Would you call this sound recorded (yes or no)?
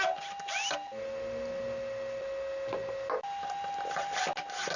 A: yes